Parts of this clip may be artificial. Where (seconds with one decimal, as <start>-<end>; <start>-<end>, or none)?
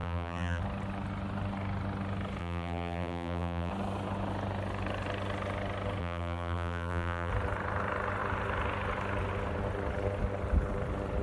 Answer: 0.0-0.6; 2.4-3.7; 6.0-7.3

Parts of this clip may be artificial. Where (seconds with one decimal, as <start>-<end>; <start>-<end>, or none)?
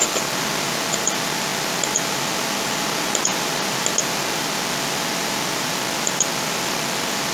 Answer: none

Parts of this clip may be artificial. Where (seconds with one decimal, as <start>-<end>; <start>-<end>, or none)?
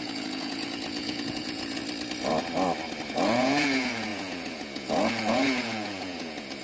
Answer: 0.0-1.8; 3.1-6.6